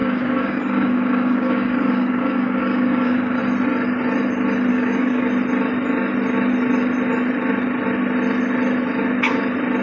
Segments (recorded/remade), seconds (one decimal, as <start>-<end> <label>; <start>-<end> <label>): 0.0-3.4 remade; 3.4-4.7 recorded; 4.7-5.3 remade; 5.3-9.8 recorded